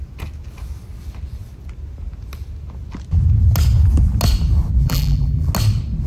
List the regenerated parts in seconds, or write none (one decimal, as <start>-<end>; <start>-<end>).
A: 4.8-5.5